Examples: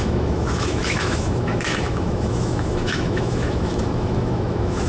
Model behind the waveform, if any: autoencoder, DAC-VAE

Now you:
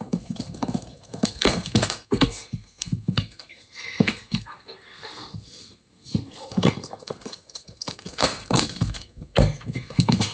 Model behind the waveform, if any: codec, SNAC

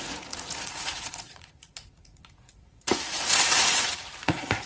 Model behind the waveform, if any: vocoder, Vocos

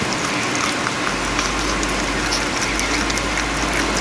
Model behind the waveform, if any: none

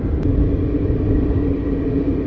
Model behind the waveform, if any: none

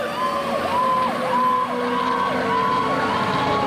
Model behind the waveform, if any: none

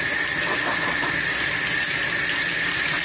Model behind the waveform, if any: none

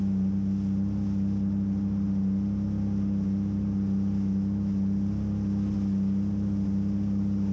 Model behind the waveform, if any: none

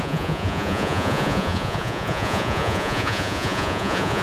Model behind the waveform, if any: vocoder, Vocos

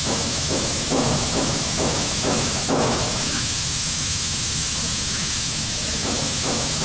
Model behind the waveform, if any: autoencoder, DAC-VAE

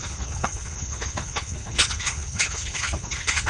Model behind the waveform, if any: codec, HILCodec